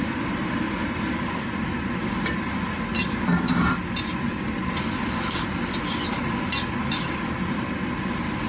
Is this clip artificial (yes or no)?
no